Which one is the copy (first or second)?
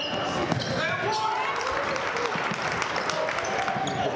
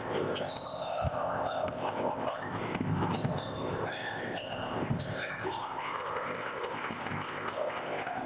second